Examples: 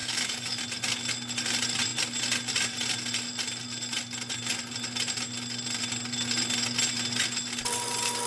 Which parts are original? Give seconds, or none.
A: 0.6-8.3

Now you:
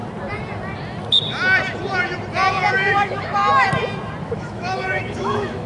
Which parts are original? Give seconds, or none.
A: 0.0-2.7; 3.4-4.2